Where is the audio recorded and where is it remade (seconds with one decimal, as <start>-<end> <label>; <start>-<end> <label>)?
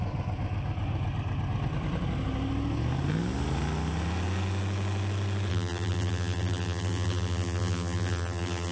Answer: 0.0-5.5 recorded; 5.5-8.7 remade